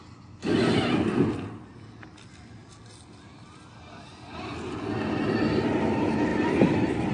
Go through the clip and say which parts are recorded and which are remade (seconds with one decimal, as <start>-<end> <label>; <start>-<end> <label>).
0.0-7.1 recorded